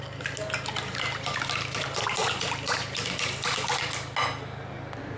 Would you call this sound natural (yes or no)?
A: yes